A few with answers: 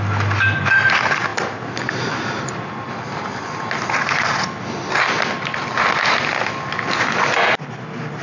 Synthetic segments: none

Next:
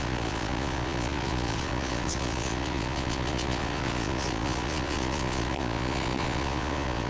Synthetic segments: 0.0-7.1 (vocoder, Vocos)